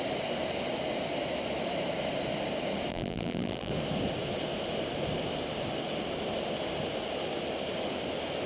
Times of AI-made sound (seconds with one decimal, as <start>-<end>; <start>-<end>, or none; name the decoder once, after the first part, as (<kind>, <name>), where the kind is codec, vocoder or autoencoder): 2.9-3.7 (vocoder, BigVGAN v2)